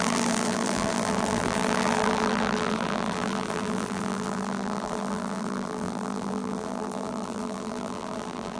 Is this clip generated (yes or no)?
yes